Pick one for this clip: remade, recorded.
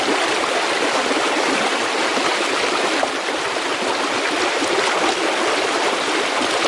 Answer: recorded